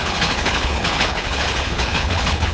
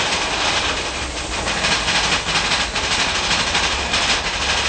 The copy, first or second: first